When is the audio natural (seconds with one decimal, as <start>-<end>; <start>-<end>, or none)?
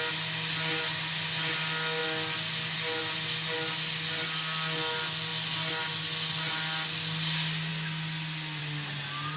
0.0-9.4